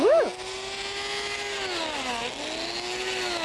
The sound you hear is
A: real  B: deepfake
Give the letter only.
A